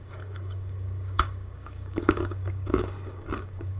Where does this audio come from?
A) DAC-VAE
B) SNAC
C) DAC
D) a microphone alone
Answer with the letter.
C